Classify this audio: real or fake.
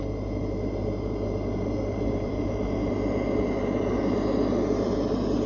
real